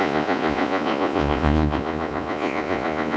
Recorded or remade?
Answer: remade